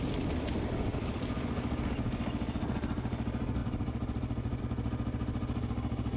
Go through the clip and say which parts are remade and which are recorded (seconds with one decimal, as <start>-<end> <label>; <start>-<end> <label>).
0.0-6.2 recorded